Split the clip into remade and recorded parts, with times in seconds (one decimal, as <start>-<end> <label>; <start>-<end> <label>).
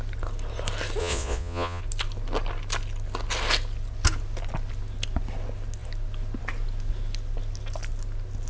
0.0-1.0 recorded; 1.0-1.8 remade; 1.8-8.5 recorded